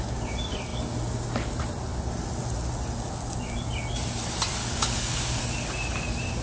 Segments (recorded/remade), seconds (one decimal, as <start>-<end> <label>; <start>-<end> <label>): 0.0-4.6 recorded; 4.6-5.4 remade; 5.4-6.4 recorded